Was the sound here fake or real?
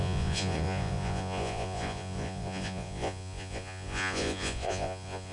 fake